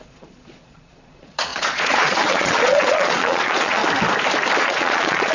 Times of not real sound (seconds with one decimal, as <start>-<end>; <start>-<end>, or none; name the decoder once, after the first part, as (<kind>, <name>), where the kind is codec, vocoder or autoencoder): 0.0-3.8 (vocoder, Vocos); 4.6-5.3